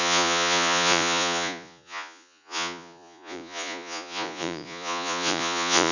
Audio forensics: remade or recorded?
remade